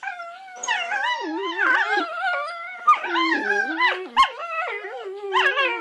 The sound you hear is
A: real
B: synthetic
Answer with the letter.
A